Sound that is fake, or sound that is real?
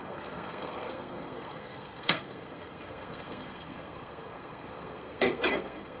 fake